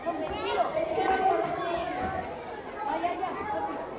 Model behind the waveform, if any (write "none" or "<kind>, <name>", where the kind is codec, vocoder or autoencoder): none